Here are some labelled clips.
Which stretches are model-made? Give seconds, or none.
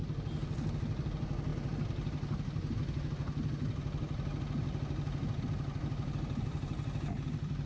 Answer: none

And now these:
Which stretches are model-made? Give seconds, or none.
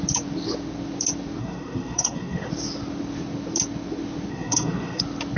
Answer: 1.4-2.5 (codec, SNAC); 4.3-5.0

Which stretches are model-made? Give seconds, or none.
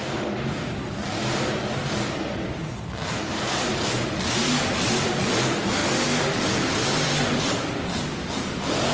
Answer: 5.8-8.3 (vocoder, BigVGAN v2)